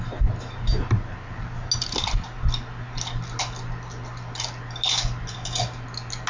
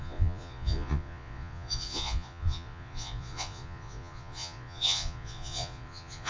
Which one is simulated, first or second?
second